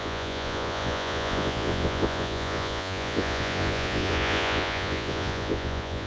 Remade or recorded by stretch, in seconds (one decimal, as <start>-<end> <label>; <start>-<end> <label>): 0.0-6.1 remade